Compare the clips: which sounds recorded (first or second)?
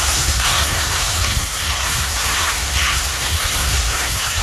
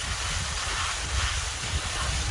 second